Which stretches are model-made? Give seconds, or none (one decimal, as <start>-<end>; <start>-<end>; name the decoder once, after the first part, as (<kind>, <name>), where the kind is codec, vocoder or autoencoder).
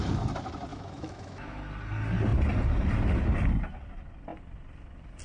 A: 0.7-1.6 (autoencoder, DAC-VAE)